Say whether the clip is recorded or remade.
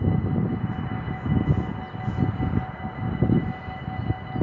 recorded